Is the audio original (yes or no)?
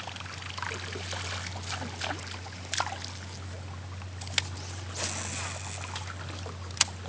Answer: yes